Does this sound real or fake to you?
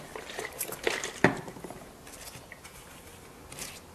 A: real